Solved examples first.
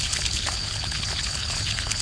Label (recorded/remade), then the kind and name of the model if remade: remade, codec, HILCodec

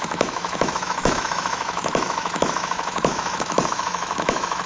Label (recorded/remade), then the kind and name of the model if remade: remade, autoencoder, DAC-VAE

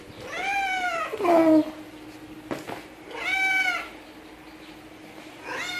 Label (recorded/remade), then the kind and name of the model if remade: recorded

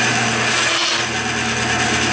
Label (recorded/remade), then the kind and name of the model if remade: recorded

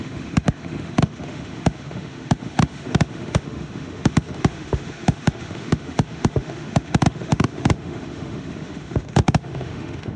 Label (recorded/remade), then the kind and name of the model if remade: remade, autoencoder, DAC-VAE